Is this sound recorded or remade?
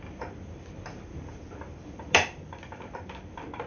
recorded